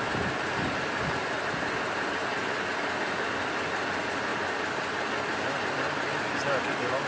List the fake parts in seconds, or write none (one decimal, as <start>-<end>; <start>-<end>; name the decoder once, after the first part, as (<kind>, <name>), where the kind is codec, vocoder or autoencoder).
none